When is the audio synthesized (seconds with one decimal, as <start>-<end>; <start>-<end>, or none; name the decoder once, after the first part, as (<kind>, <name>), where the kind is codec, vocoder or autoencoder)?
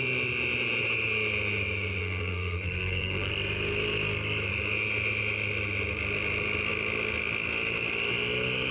2.0-3.3 (codec, SNAC)